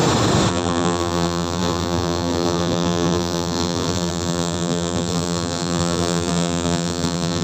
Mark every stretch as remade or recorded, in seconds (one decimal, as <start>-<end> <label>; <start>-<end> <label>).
0.0-0.5 recorded; 0.5-7.4 remade